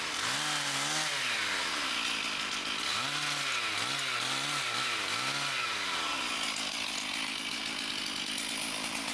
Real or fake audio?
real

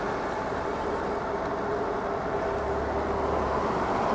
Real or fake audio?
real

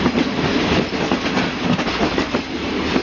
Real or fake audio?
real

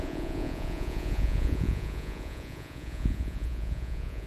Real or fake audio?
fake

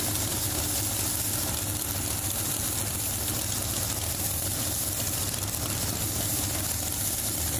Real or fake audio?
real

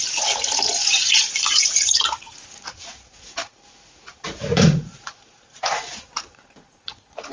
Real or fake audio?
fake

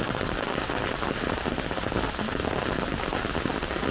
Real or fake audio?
real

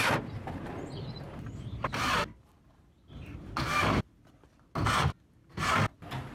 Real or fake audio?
real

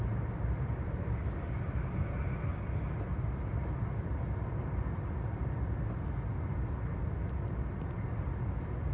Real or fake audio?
real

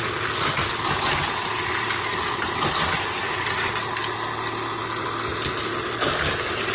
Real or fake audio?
real